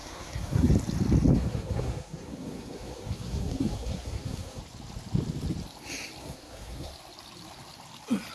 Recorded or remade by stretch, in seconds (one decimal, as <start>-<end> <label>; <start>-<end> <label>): 0.0-0.7 remade; 0.7-1.3 recorded; 1.3-4.6 remade; 4.6-6.2 recorded; 6.2-6.9 remade; 6.9-8.3 recorded

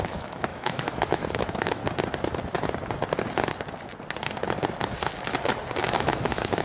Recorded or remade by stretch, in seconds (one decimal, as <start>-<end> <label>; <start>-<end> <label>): 0.0-1.8 remade; 1.8-5.8 recorded; 5.8-6.6 remade